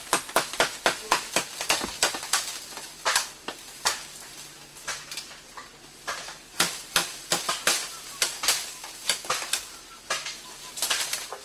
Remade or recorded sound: recorded